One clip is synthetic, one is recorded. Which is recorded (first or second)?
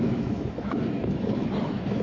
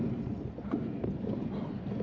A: second